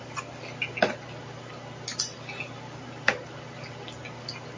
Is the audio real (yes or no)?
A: yes